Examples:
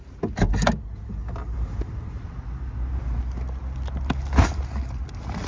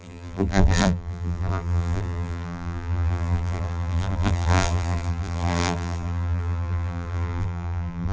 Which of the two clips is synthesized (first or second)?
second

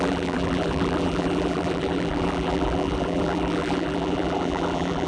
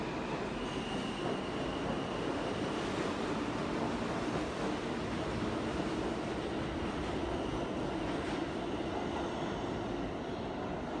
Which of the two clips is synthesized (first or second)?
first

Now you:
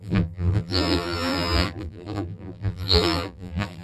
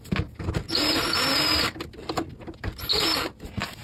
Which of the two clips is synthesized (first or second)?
first